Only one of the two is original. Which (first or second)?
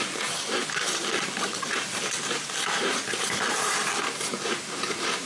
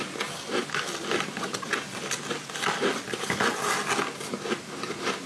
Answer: second